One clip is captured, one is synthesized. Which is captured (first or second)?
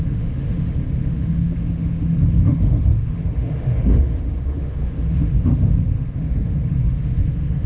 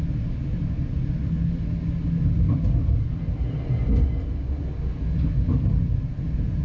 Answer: second